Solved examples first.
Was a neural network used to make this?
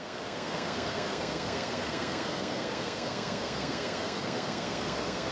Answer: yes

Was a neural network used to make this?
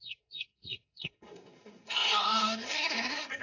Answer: yes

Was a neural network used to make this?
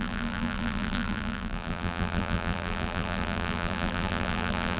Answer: yes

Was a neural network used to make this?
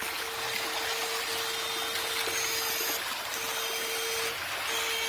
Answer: no